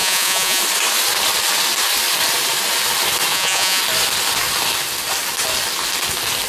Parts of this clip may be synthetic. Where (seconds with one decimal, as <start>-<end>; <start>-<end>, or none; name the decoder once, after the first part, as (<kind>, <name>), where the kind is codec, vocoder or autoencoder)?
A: 0.0-0.6 (vocoder, Vocos); 3.3-3.8